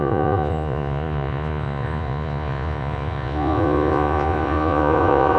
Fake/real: fake